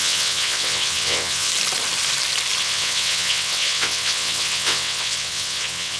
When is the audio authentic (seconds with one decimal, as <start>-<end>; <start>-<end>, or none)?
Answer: 1.5-2.6